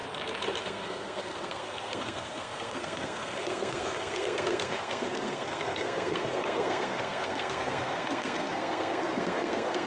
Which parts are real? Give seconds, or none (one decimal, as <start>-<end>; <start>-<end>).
0.0-0.6